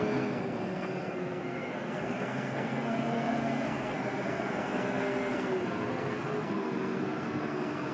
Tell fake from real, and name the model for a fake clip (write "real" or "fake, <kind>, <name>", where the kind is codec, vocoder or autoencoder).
fake, codec, SNAC